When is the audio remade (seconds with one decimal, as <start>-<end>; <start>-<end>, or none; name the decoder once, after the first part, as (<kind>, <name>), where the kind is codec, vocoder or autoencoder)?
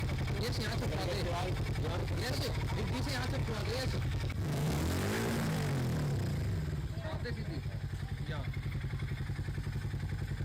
2.0-2.6 (codec, DAC); 3.4-4.8